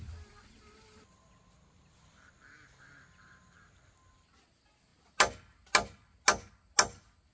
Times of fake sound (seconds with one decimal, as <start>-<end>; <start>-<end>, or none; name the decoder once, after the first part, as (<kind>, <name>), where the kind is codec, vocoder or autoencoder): none

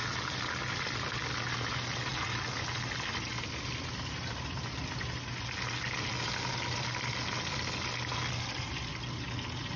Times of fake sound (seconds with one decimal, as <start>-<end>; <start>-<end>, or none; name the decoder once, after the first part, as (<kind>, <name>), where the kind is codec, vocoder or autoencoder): none

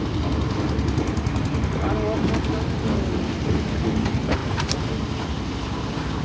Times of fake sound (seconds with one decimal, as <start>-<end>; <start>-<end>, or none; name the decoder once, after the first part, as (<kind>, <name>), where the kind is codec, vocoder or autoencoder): none

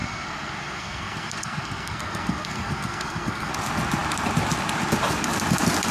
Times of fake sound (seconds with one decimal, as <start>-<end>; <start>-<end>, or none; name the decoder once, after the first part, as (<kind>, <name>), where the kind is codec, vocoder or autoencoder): 0.0-3.5 (codec, SNAC)

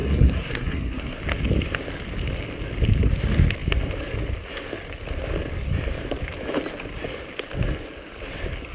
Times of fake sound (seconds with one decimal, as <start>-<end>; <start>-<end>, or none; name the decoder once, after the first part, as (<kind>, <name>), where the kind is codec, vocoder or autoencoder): 0.0-1.2 (codec, SNAC)